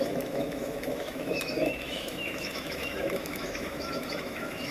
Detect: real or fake fake